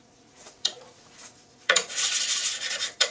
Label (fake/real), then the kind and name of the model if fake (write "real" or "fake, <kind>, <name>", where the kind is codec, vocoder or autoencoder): fake, vocoder, Vocos